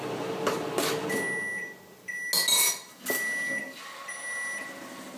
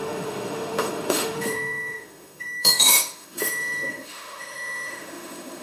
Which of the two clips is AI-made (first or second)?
second